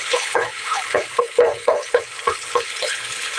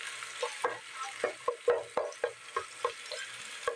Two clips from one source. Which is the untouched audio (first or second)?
second